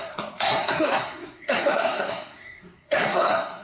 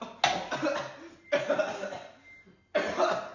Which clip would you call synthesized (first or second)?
first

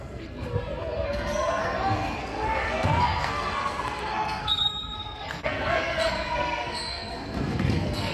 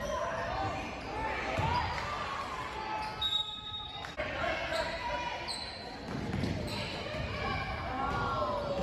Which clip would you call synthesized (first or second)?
first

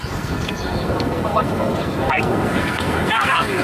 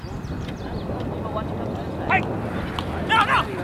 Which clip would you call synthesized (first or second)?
first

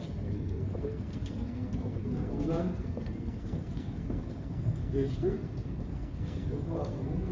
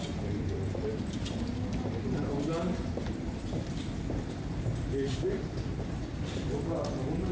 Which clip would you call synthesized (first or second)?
first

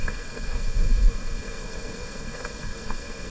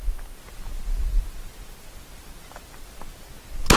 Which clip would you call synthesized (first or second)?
first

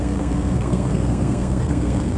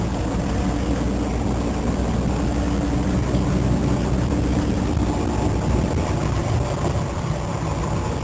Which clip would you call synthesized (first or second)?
first